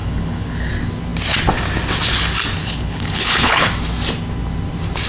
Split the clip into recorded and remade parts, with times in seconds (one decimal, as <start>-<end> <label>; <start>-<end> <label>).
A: 0.0-0.7 remade; 0.7-2.6 recorded; 2.6-3.7 remade; 3.7-5.1 recorded